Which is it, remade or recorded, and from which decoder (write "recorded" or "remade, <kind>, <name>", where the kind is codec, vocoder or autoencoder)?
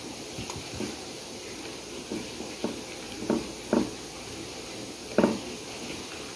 recorded